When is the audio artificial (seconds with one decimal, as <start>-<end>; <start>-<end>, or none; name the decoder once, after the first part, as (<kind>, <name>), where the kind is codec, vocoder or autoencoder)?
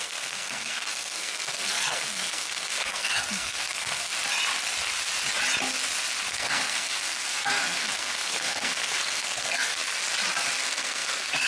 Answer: 0.0-4.1 (codec, SNAC); 6.3-9.8; 10.6-11.5